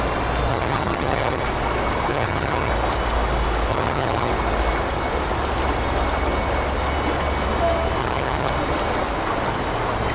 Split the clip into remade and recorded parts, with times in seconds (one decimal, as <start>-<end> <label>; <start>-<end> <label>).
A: 0.0-0.5 recorded; 0.5-1.4 remade; 1.4-2.1 recorded; 2.1-2.7 remade; 2.7-3.7 recorded; 3.7-4.3 remade; 4.3-8.0 recorded; 8.0-8.5 remade; 8.5-10.1 recorded